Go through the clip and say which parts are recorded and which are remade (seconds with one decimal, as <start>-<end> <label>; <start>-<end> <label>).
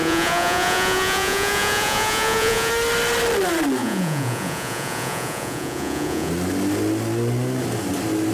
0.0-2.7 remade; 2.7-3.8 recorded; 3.8-6.3 remade; 6.3-8.3 recorded